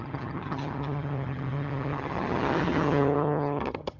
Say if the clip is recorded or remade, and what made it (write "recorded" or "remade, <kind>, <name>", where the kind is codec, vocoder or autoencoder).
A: remade, vocoder, HiFi-GAN